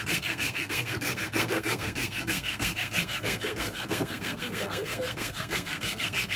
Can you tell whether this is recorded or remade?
remade